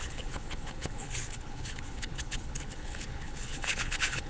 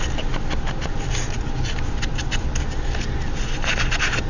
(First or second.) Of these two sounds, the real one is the second